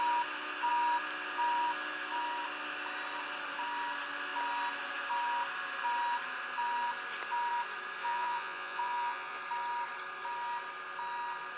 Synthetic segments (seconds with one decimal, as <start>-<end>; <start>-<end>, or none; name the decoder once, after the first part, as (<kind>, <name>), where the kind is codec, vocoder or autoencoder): 8.0-9.4 (vocoder, Vocos)